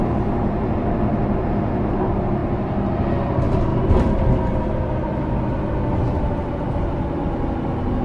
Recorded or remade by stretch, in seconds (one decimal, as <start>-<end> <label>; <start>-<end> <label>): 0.0-8.0 recorded